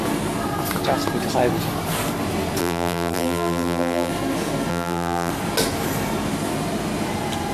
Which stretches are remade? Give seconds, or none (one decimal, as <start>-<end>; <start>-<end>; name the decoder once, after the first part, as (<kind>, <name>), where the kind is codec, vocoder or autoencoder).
2.6-4.1 (vocoder, BigVGAN v2); 4.7-5.3